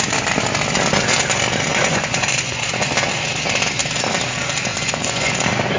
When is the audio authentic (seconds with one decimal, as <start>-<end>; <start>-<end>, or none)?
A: 0.0-1.7; 2.9-4.7; 5.3-5.8